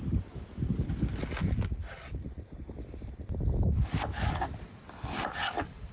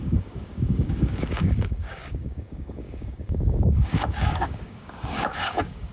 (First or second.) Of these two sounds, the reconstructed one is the second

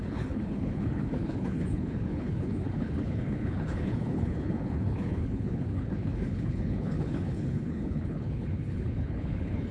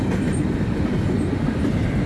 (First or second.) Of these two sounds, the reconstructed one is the first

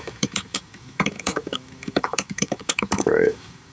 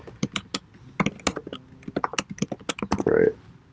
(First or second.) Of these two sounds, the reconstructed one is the first